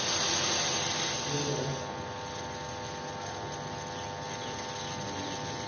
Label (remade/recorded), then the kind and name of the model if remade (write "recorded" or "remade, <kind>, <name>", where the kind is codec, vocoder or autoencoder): recorded